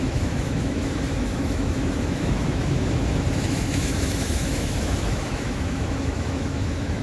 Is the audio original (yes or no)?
no